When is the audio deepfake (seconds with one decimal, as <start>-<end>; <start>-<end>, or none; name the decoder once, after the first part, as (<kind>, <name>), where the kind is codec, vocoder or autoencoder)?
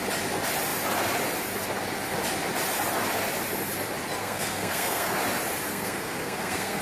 4.2-5.2 (codec, SNAC); 5.7-6.8